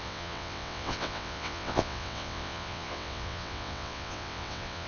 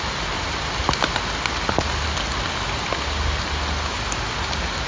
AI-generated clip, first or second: first